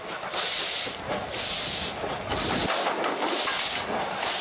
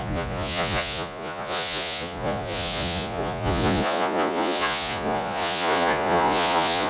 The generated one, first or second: second